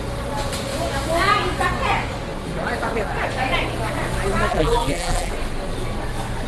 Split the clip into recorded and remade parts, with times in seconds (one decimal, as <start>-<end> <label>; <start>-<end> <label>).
0.0-4.5 recorded; 4.5-5.3 remade; 5.3-6.5 recorded